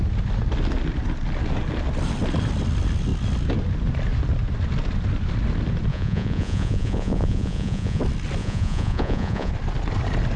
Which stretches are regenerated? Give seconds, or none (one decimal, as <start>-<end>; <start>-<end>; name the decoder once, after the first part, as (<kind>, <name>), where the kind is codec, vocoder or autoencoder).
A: 5.9-8.0 (vocoder, Vocos); 8.4-9.5